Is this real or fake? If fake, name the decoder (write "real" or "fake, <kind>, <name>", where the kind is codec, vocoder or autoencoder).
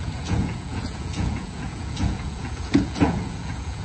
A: fake, vocoder, Vocos